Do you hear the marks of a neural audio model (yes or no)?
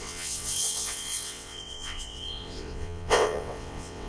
yes